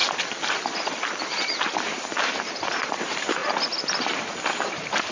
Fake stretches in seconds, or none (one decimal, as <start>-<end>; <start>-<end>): 1.4-3.4; 4.3-5.1